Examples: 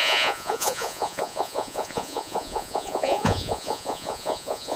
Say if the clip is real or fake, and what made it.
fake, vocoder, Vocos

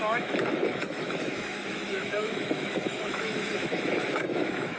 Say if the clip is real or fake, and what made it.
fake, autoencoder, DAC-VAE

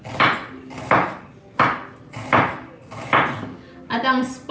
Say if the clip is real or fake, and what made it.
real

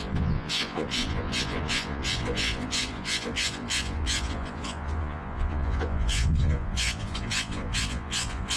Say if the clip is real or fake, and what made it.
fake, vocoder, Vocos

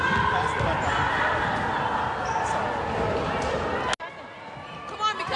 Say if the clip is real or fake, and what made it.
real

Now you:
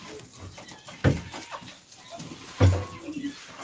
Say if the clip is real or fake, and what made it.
real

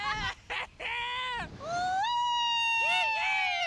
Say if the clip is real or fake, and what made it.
real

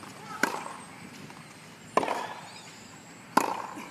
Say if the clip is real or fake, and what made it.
real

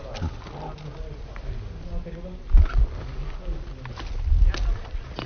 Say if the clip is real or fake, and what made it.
real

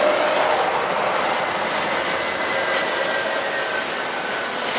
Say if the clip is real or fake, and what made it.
real